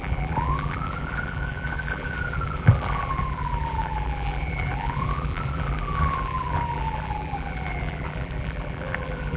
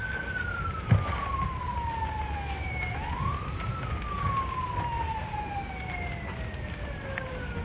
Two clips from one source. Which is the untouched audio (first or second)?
second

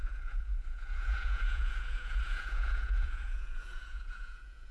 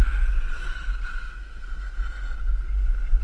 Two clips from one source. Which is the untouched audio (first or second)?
second